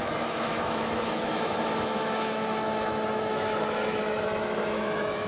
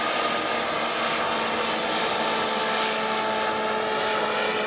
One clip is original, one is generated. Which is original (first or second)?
second